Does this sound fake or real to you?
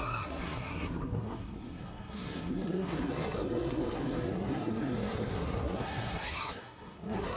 fake